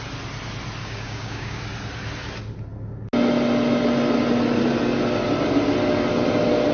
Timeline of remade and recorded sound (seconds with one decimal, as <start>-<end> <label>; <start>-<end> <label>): 0.0-0.8 recorded; 0.8-1.6 remade; 1.6-6.7 recorded